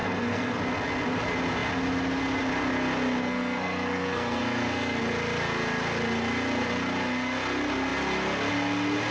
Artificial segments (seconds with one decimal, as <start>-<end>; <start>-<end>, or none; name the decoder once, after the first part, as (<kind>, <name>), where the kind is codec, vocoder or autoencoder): 0.0-0.6 (codec, SNAC); 3.2-5.0